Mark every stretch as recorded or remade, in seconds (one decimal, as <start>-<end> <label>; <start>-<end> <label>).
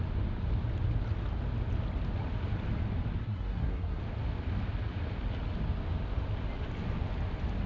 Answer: 0.0-3.2 recorded; 3.2-4.0 remade; 4.0-7.7 recorded